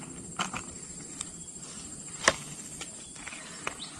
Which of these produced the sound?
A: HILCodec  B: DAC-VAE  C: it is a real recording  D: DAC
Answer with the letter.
C